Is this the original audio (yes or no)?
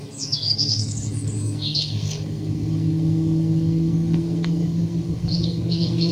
no